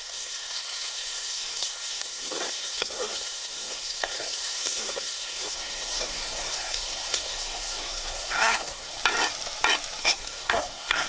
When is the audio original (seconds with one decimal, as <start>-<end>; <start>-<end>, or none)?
9.0-10.0